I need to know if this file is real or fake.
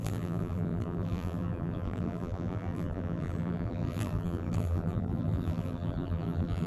fake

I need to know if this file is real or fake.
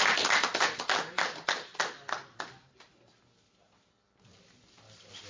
real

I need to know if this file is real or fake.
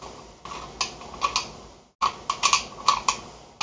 real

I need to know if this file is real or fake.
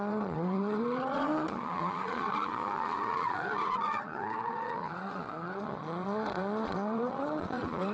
fake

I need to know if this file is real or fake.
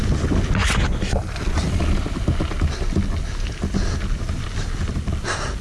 real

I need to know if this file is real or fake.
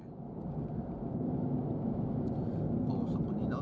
real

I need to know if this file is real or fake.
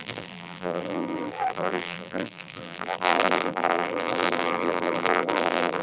fake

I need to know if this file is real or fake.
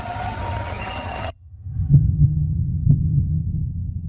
fake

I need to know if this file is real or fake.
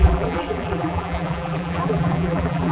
fake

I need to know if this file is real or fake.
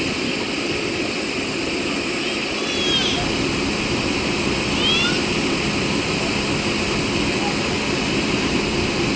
real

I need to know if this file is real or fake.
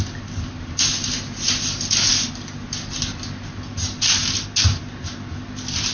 real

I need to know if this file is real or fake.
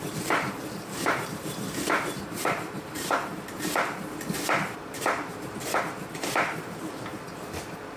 fake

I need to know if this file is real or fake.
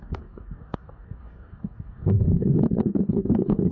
fake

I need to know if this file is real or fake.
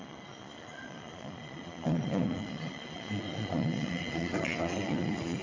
fake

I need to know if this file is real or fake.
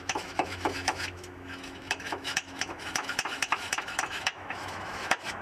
fake